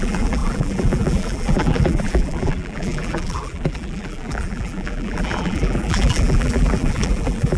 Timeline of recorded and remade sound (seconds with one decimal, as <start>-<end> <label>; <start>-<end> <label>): 0.0-7.6 remade